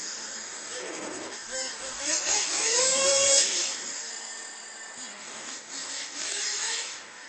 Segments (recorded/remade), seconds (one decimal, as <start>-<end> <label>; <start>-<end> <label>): 0.0-4.1 remade; 4.1-5.2 recorded; 5.2-7.3 remade